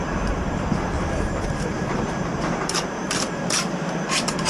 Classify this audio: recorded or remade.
remade